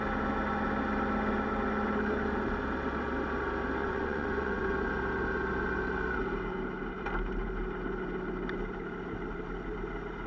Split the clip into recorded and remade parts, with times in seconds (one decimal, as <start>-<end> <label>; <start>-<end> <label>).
0.0-3.8 recorded; 3.8-4.7 remade; 4.7-10.3 recorded